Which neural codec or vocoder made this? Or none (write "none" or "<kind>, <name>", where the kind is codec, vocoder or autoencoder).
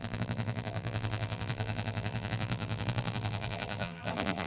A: vocoder, BigVGAN v2